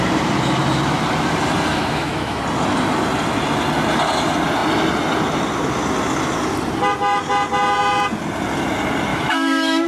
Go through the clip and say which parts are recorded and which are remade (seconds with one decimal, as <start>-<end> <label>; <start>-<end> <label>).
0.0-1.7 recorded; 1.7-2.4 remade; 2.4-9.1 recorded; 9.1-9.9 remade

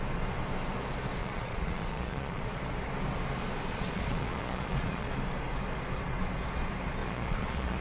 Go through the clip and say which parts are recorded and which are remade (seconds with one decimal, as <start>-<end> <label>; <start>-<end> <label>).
0.0-1.2 recorded; 1.2-2.5 remade; 2.5-3.7 recorded; 3.7-5.1 remade; 5.1-7.0 recorded; 7.0-7.8 remade

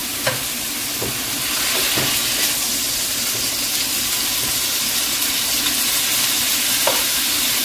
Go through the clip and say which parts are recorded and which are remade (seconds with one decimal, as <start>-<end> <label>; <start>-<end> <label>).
0.0-7.6 recorded

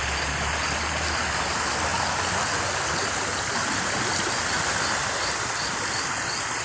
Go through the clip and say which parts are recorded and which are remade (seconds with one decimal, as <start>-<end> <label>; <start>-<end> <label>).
0.0-6.6 recorded

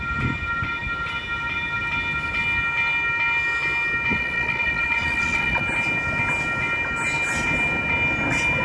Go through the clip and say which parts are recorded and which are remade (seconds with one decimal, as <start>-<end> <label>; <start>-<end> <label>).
0.0-4.1 recorded; 4.1-5.6 remade; 5.6-8.6 recorded

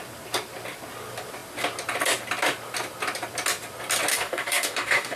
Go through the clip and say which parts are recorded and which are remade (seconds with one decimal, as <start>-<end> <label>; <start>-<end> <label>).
0.0-4.1 recorded; 4.1-5.2 remade

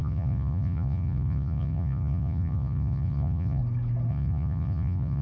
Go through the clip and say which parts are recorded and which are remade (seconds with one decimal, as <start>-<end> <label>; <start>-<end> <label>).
0.0-3.6 remade; 3.6-4.1 recorded; 4.1-5.2 remade

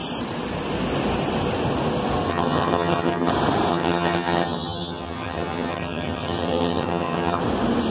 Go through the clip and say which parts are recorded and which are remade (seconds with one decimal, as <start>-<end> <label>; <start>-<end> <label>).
0.0-2.3 recorded; 2.3-3.3 remade; 3.3-3.7 recorded; 3.7-7.4 remade; 7.4-7.9 recorded